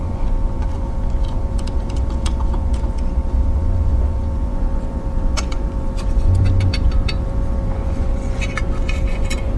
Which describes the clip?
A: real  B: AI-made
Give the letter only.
B